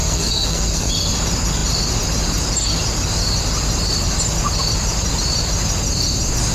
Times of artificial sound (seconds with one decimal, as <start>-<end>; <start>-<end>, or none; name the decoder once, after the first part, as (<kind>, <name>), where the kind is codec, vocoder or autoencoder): 0.0-0.9 (codec, SNAC)